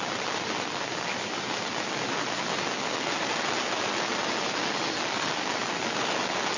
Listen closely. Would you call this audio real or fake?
real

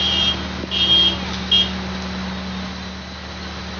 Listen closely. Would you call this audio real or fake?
real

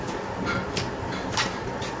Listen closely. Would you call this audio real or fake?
real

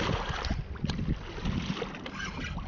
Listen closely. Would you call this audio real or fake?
real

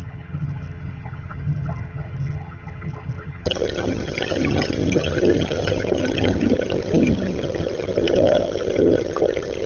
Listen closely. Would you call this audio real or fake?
fake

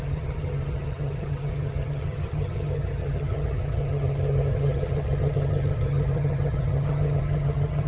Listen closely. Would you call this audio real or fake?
fake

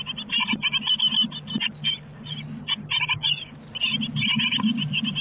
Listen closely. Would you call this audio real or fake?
real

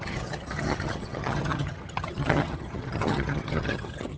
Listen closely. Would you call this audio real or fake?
fake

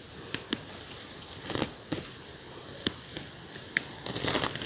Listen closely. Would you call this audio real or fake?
real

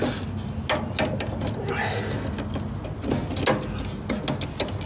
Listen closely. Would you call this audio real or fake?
real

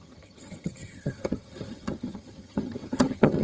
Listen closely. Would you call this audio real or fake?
fake